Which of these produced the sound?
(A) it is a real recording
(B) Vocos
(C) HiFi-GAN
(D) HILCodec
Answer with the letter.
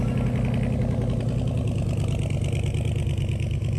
A